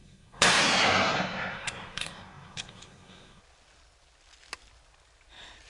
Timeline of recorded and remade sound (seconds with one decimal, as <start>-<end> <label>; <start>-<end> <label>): 0.0-3.4 remade; 3.4-5.7 recorded